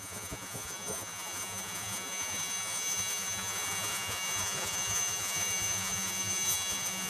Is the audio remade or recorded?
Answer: remade